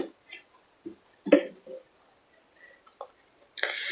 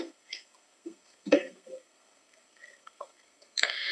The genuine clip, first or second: first